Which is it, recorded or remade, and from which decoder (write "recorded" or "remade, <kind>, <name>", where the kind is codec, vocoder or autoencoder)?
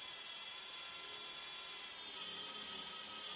recorded